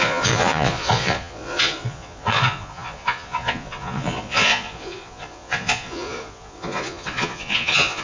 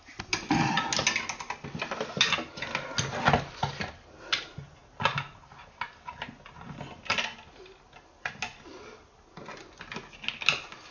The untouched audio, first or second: second